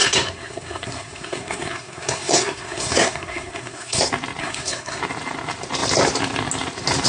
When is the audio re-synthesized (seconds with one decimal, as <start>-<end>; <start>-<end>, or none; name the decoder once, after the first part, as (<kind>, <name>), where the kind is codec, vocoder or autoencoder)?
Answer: 0.0-4.0 (codec, SNAC); 4.4-5.0